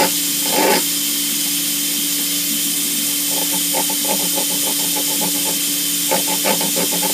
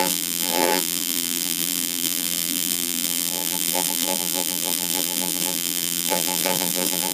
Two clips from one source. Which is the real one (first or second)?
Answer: first